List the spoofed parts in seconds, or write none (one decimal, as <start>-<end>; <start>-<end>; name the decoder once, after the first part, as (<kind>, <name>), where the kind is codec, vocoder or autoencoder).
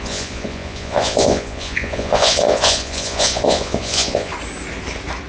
0.0-4.3 (vocoder, Vocos)